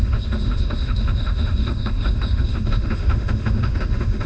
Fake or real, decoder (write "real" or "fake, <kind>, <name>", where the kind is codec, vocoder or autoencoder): fake, autoencoder, DAC-VAE